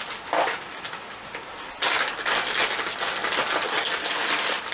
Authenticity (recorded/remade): recorded